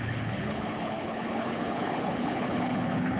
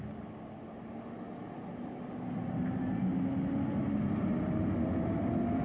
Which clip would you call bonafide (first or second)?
second